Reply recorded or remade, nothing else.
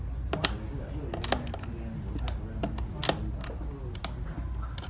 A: recorded